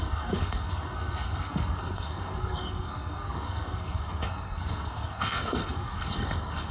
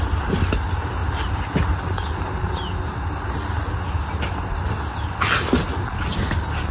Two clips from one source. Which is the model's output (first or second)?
first